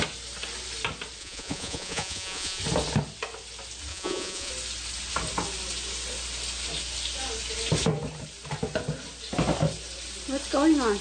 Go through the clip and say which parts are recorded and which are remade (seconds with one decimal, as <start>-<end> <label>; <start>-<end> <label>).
0.0-1.2 recorded; 1.2-2.6 remade; 2.6-3.9 recorded; 3.9-4.5 remade; 4.5-11.0 recorded